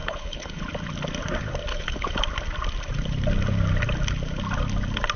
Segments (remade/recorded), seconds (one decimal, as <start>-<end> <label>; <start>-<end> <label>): 0.0-0.6 remade; 0.6-1.7 recorded; 1.7-2.2 remade; 2.2-5.2 recorded